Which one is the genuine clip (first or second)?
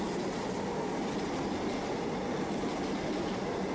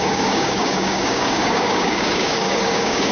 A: first